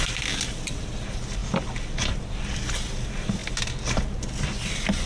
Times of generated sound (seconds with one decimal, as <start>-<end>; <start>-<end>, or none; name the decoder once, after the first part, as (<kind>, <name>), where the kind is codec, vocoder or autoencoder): none